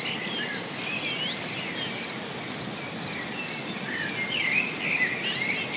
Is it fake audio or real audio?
real